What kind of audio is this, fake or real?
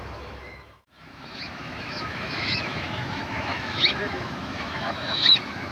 fake